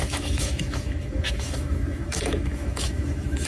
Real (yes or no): no